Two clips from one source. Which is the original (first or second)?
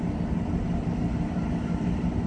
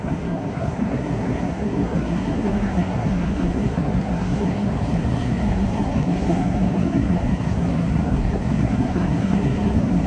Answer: first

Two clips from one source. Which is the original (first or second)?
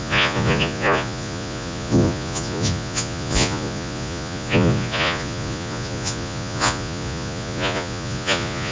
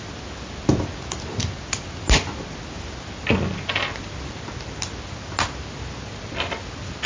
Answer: second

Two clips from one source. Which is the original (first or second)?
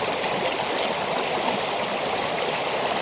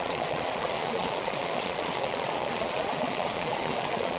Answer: first